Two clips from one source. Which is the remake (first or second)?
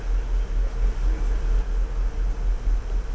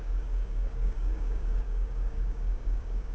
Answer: second